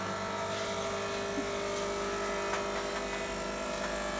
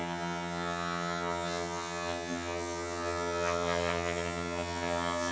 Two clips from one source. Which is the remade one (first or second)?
second